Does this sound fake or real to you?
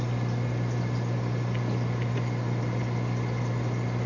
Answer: real